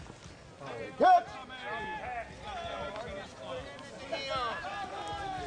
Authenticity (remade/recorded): recorded